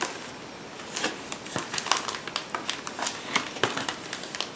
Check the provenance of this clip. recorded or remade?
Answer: recorded